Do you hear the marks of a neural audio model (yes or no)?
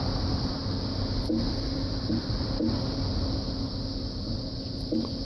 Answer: yes